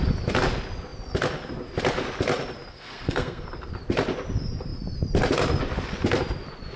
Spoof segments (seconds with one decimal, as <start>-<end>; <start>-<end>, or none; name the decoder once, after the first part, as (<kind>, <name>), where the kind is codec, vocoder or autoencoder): 2.7-3.4 (codec, SNAC)